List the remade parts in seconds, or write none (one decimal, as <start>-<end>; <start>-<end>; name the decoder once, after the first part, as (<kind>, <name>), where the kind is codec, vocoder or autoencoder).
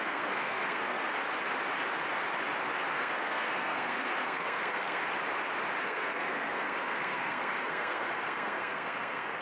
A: 0.0-1.1 (codec, SNAC); 2.9-5.0; 5.8-9.4